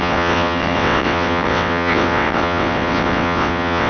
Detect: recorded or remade remade